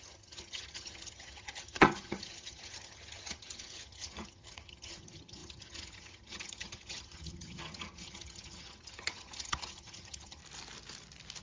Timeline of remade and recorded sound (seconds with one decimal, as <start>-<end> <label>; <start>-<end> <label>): 0.0-10.4 remade; 10.4-11.4 recorded